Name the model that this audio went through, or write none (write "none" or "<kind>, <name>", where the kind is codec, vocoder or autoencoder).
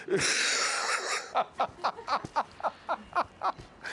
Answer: none